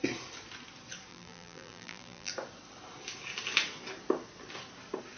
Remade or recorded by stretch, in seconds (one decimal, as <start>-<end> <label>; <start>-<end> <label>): 0.0-1.1 recorded; 1.1-2.3 remade; 2.3-5.2 recorded